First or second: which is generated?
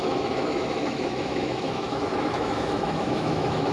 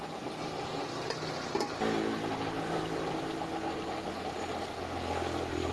first